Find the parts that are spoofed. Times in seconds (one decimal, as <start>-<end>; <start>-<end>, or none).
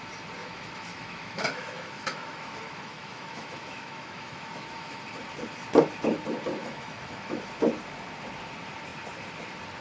0.4-5.0; 6.6-7.4